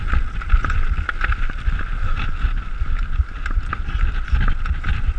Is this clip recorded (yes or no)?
yes